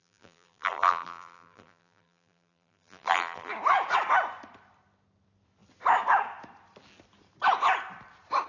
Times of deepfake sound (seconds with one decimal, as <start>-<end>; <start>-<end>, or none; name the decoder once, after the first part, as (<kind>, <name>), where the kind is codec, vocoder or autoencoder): 0.0-3.5 (vocoder, BigVGAN v2)